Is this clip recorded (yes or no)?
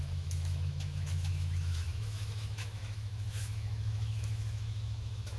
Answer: no